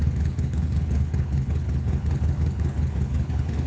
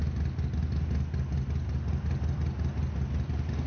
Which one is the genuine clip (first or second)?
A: second